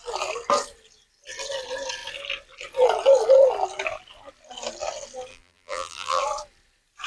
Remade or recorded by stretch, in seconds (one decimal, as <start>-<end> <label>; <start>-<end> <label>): 0.0-5.3 recorded; 5.3-6.2 remade; 6.2-7.1 recorded